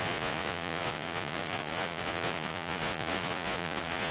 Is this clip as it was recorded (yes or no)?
no